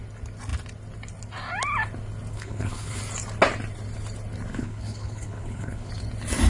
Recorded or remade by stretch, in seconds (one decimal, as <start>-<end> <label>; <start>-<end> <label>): 0.0-2.3 recorded; 2.3-3.0 remade; 3.0-4.5 recorded; 4.5-5.9 remade; 5.9-6.5 recorded